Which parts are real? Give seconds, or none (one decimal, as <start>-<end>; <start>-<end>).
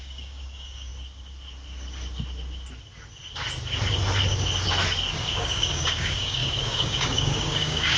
0.9-5.1